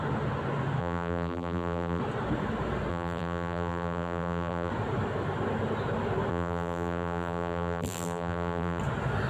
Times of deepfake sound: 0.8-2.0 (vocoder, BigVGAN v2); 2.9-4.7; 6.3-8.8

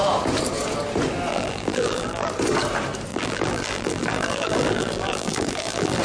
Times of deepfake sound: 1.3-2.3 (vocoder, BigVGAN v2); 3.1-6.0

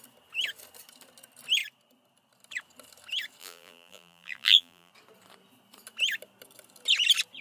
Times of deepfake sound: 3.4-4.9 (vocoder, BigVGAN v2)

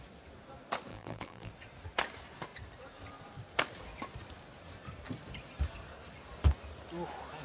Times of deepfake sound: 0.9-1.5 (vocoder, BigVGAN v2)